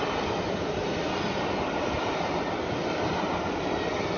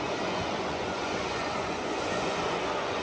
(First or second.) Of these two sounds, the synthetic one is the second